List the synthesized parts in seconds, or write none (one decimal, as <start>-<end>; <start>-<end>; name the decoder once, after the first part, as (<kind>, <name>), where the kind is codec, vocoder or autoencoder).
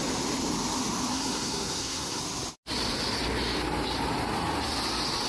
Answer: 1.1-2.2 (codec, SNAC)